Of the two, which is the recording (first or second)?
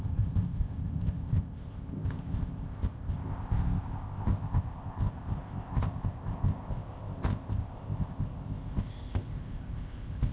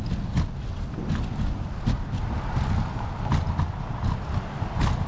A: second